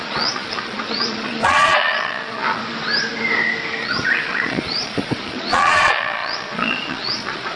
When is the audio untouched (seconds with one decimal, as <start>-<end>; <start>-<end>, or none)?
2.6-3.8